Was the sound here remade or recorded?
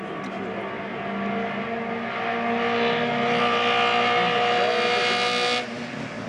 recorded